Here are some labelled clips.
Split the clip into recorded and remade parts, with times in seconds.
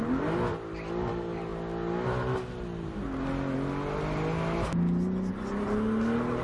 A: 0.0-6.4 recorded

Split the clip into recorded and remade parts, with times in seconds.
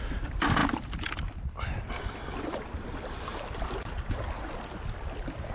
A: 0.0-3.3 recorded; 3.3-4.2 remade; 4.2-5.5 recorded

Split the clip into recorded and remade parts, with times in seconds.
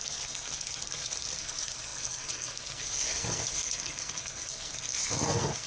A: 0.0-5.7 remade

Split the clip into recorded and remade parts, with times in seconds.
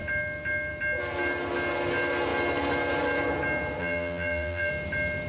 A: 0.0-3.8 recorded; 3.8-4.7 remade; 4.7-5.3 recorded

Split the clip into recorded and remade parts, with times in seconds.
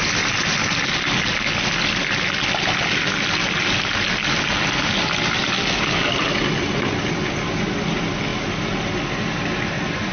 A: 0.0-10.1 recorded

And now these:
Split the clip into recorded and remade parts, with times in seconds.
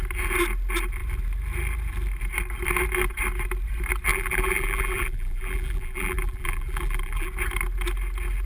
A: 0.0-4.1 recorded; 4.1-7.3 remade; 7.3-8.5 recorded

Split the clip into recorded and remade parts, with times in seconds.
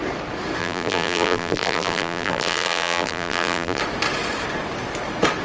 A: 0.0-0.6 recorded; 0.6-3.8 remade; 3.8-5.4 recorded